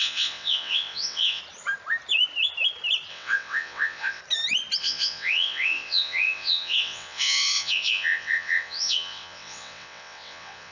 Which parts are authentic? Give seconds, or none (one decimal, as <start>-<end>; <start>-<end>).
1.4-3.1; 4.2-4.8